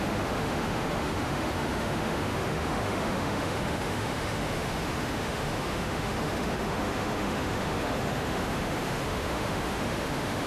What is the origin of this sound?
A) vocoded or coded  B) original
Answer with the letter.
A